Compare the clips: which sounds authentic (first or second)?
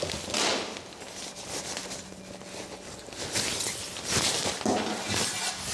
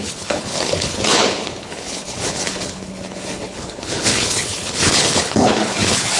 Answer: first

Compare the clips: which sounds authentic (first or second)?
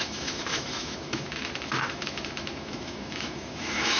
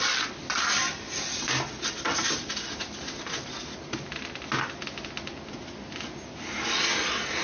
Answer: second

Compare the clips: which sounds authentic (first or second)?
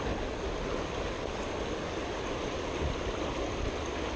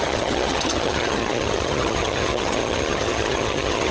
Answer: first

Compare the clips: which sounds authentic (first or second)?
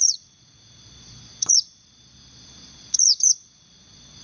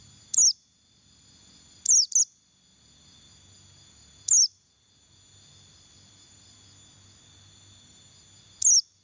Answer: second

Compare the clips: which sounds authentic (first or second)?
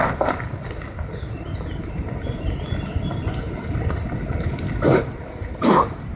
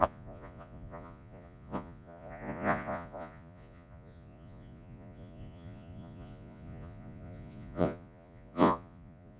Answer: first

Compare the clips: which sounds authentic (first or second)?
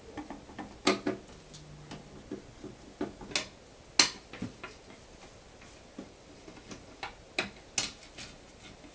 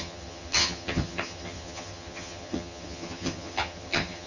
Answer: first